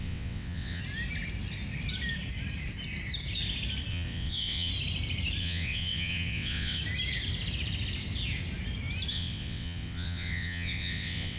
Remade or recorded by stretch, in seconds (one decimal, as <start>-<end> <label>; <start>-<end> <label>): 0.0-0.8 remade; 0.8-3.9 recorded; 3.9-4.7 remade; 4.7-5.4 recorded; 5.4-6.8 remade; 6.8-9.1 recorded; 9.1-11.4 remade